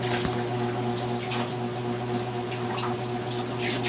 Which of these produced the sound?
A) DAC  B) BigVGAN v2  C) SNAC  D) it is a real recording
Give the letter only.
D